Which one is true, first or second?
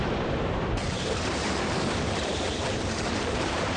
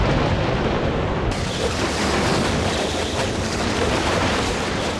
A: second